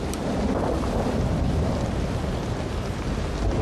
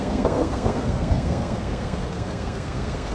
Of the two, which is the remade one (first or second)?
second